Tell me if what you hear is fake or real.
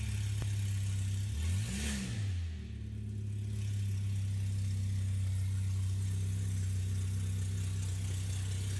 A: real